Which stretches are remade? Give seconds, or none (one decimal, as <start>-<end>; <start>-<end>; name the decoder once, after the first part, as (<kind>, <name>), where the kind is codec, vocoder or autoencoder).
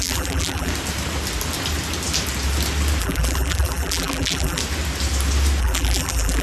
0.0-0.7 (vocoder, BigVGAN v2); 3.0-4.6; 5.6-6.4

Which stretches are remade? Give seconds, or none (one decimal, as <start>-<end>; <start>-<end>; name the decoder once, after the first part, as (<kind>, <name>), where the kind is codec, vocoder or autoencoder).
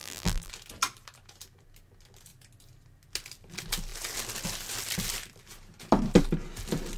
0.0-0.5 (vocoder, BigVGAN v2)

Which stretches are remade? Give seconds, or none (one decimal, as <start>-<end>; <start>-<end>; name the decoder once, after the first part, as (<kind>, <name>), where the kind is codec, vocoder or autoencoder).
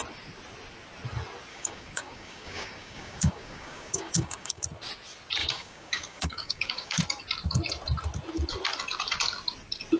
1.5-4.6 (codec, DAC); 5.4-7.0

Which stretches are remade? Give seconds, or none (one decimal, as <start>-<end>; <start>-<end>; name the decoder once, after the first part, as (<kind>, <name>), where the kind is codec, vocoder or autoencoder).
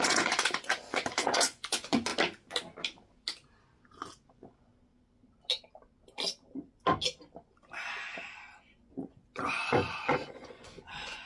0.0-2.1 (vocoder, Vocos); 4.3-4.7; 8.6-11.3